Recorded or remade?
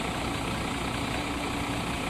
recorded